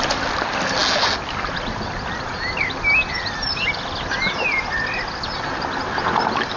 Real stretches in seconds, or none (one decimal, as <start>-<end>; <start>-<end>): 0.0-6.6

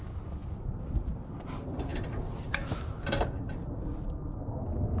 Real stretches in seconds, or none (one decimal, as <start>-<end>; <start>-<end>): 0.0-5.0

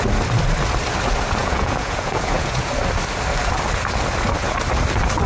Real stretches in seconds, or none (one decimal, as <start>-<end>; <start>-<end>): 0.0-1.4; 2.7-5.3

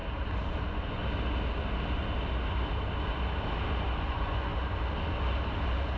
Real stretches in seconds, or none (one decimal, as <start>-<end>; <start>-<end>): 0.0-0.6; 1.0-4.0; 4.5-6.0

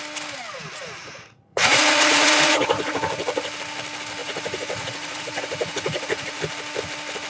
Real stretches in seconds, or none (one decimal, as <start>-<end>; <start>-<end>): 0.0-1.0; 3.0-4.2; 6.4-7.3

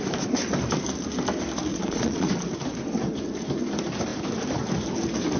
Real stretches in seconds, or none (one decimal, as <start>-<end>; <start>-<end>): 0.0-1.7; 2.3-5.4

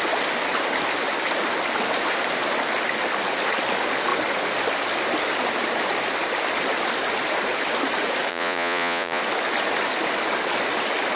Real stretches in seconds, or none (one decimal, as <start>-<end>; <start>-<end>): 0.0-8.3; 9.2-11.2